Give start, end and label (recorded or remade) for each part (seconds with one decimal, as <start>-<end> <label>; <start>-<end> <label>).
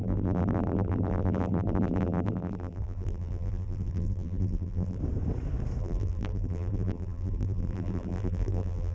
0.0-5.0 remade; 5.0-5.8 recorded; 5.8-8.9 remade